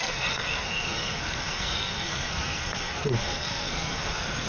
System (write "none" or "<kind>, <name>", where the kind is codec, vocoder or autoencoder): codec, SNAC